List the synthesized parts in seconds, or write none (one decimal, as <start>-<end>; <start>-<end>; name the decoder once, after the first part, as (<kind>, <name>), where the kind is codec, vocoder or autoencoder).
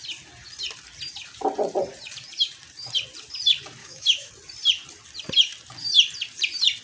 3.8-4.3 (autoencoder, DAC-VAE)